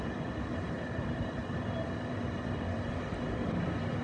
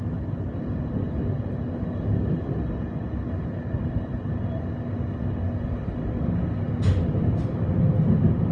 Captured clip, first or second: second